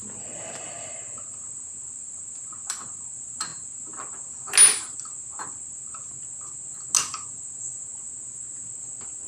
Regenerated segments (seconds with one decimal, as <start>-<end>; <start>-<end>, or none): none